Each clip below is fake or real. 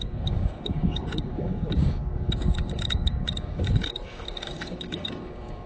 fake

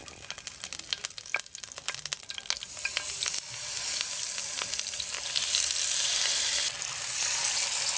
real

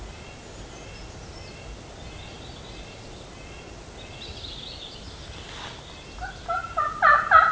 real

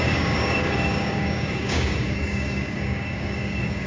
fake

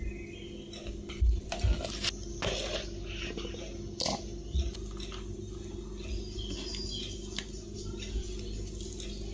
real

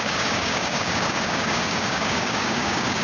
fake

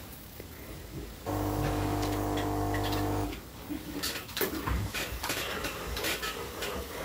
fake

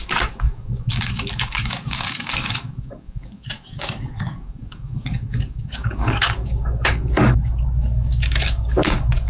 fake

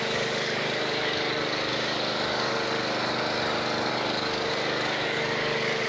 fake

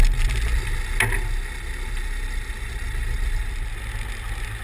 real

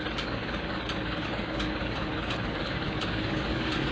fake